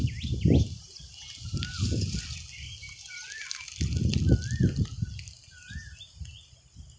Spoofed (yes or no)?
no